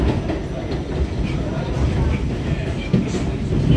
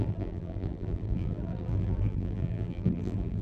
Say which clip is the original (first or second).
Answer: first